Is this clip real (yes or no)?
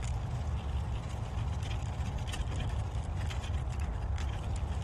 yes